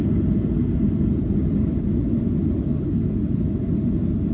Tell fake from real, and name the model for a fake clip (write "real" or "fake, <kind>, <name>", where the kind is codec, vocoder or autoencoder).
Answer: real